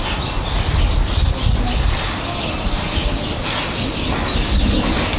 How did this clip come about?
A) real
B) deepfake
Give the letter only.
A